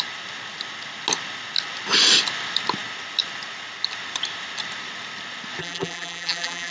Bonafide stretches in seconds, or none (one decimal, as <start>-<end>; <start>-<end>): 0.0-5.6